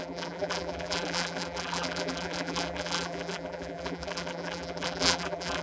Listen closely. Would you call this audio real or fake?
fake